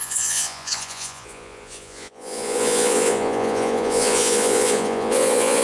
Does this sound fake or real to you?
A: fake